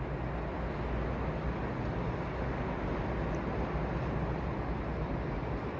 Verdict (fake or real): real